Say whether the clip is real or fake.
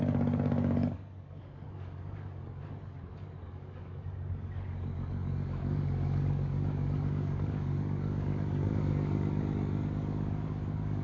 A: fake